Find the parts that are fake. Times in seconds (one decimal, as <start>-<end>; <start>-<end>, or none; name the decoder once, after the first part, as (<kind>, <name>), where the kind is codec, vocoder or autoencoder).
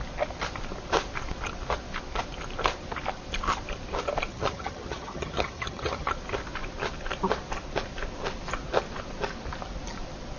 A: 4.3-6.1 (vocoder, HiFi-GAN)